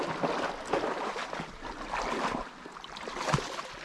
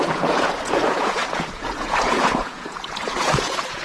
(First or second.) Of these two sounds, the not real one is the second